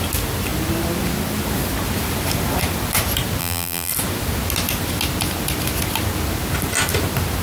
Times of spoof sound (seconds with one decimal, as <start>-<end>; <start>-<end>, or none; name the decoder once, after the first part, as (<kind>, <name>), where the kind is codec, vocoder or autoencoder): 3.4-3.9 (vocoder, BigVGAN v2)